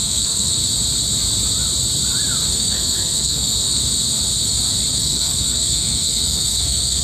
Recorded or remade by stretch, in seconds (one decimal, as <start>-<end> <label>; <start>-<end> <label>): 0.0-0.6 remade; 0.6-2.5 recorded; 2.5-3.8 remade; 3.8-4.9 recorded; 4.9-7.0 remade